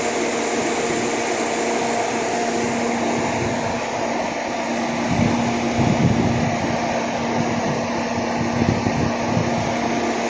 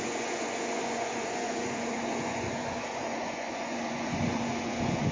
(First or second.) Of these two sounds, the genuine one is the first